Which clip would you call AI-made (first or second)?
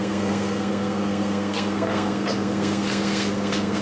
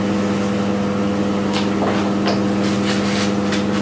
first